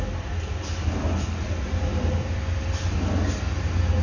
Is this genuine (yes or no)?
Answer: yes